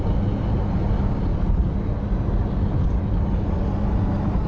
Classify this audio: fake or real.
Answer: real